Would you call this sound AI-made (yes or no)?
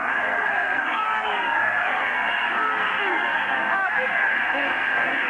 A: yes